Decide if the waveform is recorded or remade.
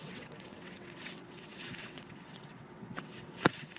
remade